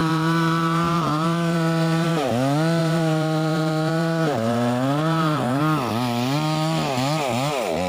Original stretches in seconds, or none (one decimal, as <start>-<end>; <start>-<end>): 2.3-2.8; 5.6-7.9